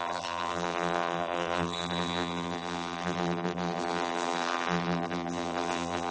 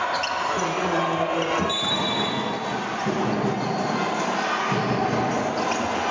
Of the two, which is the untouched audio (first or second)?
second